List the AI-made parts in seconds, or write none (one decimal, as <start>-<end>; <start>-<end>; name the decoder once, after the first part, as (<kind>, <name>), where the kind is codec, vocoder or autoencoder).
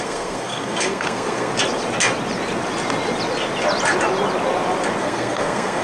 0.0-1.5 (codec, SNAC); 5.0-5.8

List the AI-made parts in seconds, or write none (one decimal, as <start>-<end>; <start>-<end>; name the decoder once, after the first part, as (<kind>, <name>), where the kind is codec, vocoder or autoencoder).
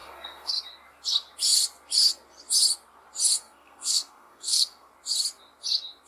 0.0-0.5 (codec, SNAC); 3.3-4.9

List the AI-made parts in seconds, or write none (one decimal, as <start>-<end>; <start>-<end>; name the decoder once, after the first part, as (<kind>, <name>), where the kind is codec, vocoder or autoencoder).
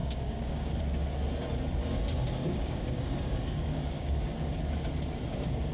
0.0-0.8 (codec, DAC); 1.8-4.2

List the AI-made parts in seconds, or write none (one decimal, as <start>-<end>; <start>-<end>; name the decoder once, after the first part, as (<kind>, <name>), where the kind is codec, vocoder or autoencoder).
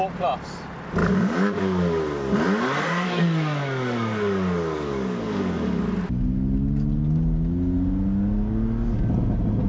1.0-5.8 (codec, DAC)